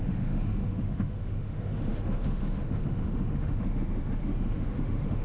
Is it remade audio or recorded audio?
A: remade